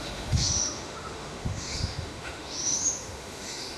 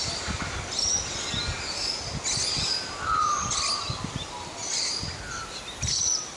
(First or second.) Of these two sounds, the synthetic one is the first